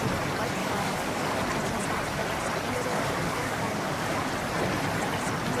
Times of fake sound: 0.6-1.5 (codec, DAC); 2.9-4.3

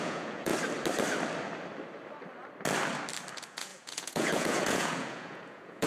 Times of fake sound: 0.0-0.5 (vocoder, Vocos); 3.3-5.9

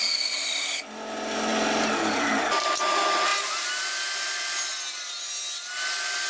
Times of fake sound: none

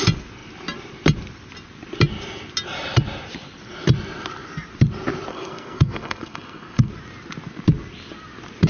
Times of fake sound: 5.3-6.9 (codec, SNAC)

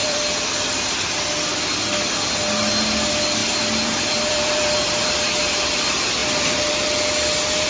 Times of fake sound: 0.0-1.0 (vocoder, BigVGAN v2); 3.4-5.4; 6.2-6.7